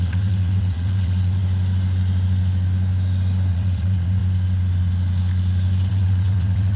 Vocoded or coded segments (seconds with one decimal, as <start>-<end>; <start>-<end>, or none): 0.0-1.4; 3.5-4.2; 5.9-6.8